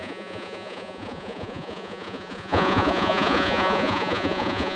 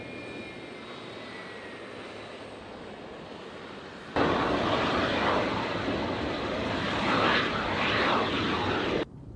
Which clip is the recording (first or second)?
second